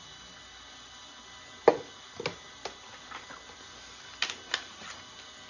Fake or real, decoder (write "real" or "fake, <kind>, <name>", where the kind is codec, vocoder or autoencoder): real